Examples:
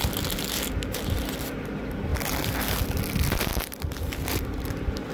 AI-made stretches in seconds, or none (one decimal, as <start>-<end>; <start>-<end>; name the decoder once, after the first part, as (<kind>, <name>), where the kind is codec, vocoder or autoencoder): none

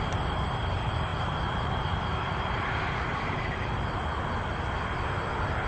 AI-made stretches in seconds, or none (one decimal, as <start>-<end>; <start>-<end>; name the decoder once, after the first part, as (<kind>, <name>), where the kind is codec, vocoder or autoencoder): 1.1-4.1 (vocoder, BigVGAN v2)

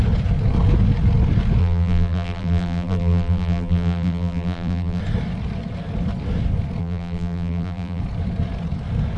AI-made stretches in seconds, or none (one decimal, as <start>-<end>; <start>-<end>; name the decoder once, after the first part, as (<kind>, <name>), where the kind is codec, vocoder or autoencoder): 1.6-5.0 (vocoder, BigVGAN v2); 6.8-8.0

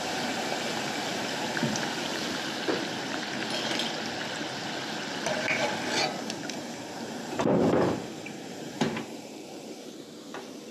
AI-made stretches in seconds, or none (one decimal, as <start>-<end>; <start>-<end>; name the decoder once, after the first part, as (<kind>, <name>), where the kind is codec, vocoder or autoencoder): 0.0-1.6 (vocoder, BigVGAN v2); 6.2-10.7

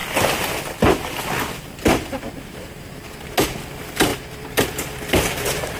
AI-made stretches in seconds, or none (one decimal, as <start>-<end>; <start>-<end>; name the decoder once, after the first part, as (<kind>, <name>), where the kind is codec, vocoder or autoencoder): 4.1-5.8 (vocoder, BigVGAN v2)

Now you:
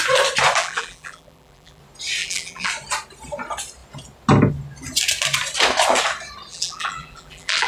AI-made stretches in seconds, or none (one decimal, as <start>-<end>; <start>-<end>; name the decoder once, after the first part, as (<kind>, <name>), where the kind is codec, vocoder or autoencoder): 0.6-1.8 (vocoder, BigVGAN v2); 2.2-2.7; 6.5-7.7

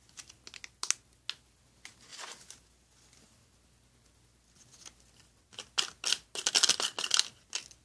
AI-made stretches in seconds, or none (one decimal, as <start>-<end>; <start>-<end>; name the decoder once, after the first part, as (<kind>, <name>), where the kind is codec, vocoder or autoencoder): none

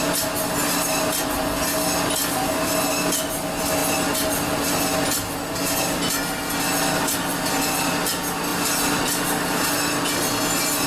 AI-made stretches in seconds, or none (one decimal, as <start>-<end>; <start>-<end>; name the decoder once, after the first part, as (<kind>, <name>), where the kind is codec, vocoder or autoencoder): none